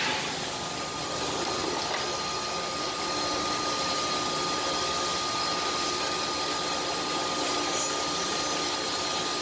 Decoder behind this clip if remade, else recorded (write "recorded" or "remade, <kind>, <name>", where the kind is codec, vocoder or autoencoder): recorded